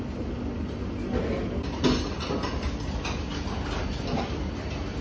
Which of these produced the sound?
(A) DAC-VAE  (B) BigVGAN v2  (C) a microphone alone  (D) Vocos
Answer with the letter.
C